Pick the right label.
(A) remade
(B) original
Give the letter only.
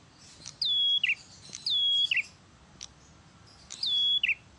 B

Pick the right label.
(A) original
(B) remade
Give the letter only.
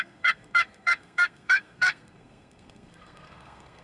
B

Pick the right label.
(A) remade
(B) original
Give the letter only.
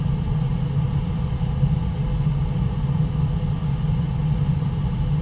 B